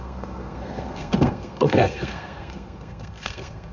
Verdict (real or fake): fake